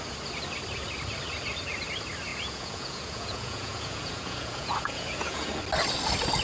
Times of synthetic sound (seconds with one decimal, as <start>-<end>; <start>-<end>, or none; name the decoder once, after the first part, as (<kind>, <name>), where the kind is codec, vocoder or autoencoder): 2.3-5.6 (vocoder, Vocos)